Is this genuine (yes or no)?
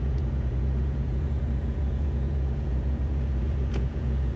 no